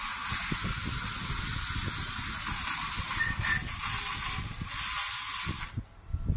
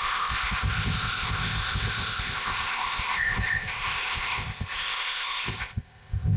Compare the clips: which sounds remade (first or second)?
second